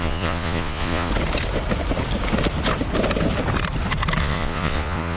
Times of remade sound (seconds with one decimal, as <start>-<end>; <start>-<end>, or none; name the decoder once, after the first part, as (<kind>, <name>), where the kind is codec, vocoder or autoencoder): 0.0-1.1 (vocoder, Vocos); 4.2-5.2